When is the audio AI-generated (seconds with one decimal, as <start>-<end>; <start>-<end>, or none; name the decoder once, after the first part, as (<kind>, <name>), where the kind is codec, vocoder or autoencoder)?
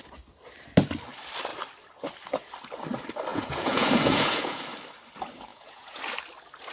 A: 3.3-4.6 (vocoder, Vocos); 5.5-6.0